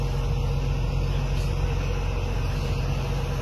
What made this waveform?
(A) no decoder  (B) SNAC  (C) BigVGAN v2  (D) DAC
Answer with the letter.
A